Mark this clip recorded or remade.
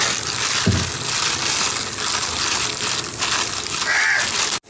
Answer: recorded